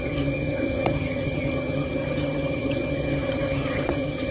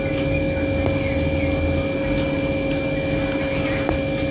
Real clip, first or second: second